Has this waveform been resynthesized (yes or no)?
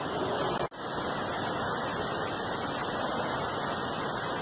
no